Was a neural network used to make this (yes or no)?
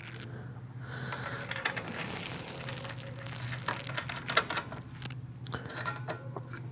no